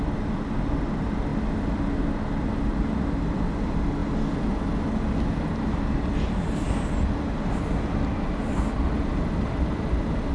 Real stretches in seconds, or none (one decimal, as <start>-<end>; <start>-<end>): 0.0-10.3